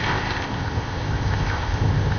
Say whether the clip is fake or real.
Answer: fake